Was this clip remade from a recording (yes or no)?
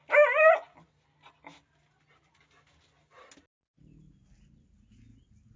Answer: no